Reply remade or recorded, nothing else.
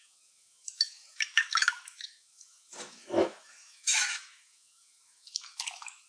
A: remade